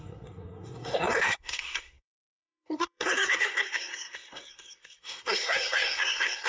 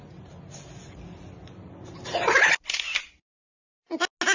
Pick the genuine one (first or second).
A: second